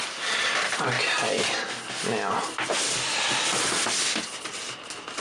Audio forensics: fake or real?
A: real